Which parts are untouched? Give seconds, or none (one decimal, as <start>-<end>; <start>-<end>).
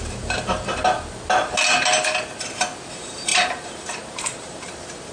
0.7-2.9